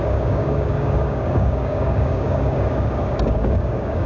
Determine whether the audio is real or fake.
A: fake